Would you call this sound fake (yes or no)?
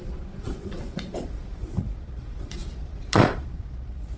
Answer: yes